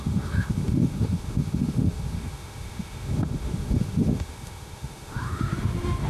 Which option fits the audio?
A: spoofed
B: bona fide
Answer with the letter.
A